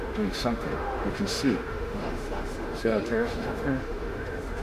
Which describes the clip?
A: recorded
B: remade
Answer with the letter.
B